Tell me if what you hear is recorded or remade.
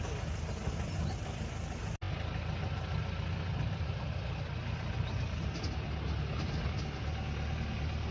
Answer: recorded